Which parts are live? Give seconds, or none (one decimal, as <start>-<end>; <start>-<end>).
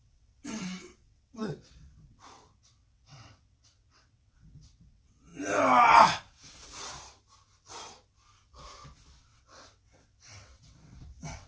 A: 5.3-9.2